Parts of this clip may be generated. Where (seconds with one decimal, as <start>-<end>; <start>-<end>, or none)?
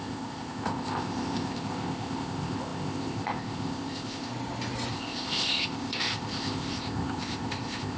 0.0-4.3; 4.9-8.0